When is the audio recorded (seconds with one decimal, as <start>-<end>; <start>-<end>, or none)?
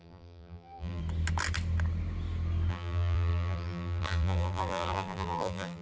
1.0-2.7